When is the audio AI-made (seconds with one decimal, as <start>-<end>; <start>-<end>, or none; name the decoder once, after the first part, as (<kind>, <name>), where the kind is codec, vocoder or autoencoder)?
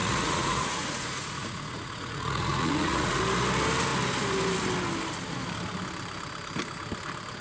0.0-3.2 (vocoder, Vocos)